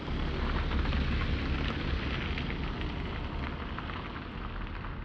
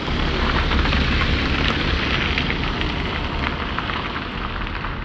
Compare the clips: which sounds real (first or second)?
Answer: first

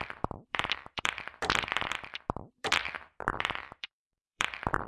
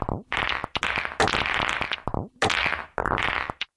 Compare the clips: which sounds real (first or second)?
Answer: second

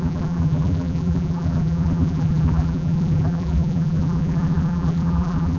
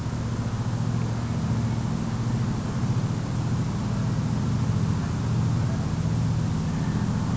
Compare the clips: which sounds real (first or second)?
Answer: second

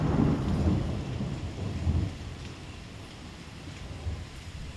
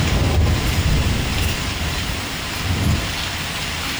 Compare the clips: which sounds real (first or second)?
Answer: second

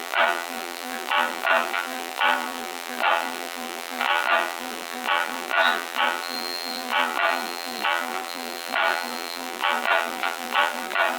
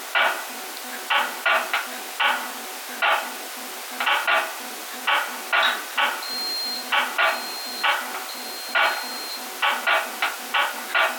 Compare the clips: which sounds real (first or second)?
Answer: second